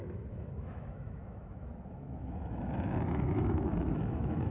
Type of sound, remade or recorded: remade